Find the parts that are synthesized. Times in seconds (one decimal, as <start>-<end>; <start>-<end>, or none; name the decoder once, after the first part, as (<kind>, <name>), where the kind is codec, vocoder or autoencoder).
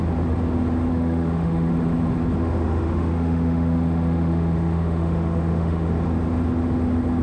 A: 0.9-1.7 (autoencoder, DAC-VAE); 2.4-5.9